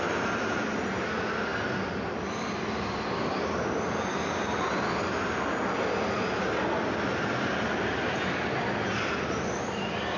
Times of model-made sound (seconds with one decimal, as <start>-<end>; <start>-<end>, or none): none